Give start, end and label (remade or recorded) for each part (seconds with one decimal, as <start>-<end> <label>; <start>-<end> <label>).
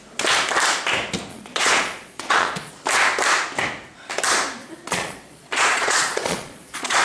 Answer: 0.0-1.3 recorded; 1.3-2.7 remade; 2.7-4.6 recorded; 4.6-7.0 remade